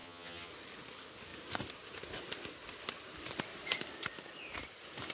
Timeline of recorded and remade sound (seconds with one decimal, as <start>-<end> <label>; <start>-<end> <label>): 0.0-0.5 remade; 0.5-5.1 recorded